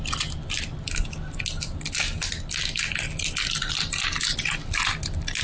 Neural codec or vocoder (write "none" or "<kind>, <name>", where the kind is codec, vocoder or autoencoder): none